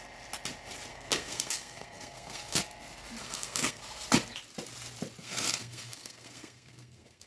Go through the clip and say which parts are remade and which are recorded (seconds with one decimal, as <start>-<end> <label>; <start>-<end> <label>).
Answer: 0.0-0.9 recorded; 0.9-2.6 remade; 2.6-3.2 recorded; 3.2-3.8 remade; 3.8-5.2 recorded; 5.2-7.3 remade